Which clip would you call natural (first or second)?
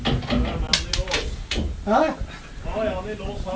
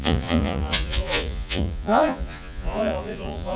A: first